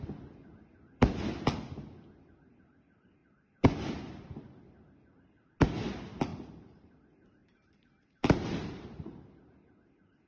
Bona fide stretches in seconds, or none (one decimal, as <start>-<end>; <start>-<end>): 0.0-6.3; 6.9-7.4; 9.2-10.3

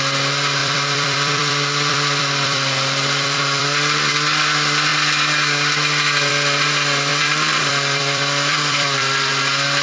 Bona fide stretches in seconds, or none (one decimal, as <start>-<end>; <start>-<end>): 0.0-0.6; 4.1-7.1; 9.3-9.8

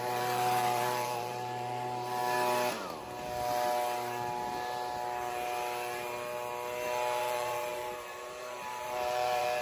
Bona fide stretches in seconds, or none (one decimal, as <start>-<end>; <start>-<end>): 2.2-7.2

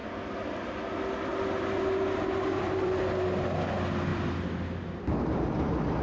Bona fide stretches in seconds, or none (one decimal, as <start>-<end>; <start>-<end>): 0.0-1.3; 3.0-4.1

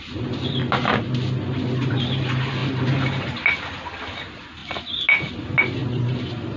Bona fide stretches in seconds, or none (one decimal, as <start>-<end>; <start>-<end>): 0.0-5.8

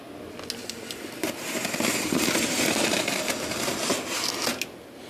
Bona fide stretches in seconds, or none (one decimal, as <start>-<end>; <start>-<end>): 0.0-1.2; 4.3-5.1